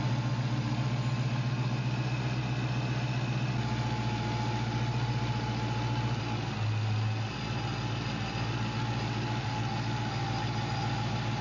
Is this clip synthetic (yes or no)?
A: no